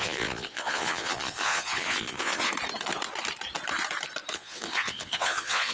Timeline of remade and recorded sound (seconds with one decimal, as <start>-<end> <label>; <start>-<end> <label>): 0.0-2.5 remade; 2.5-4.3 recorded; 4.3-5.7 remade